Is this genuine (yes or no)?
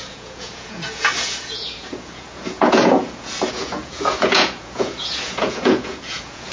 no